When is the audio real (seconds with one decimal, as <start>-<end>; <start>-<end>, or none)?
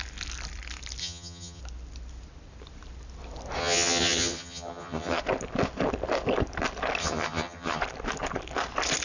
0.0-1.0; 1.6-3.6; 5.2-7.0; 7.8-9.0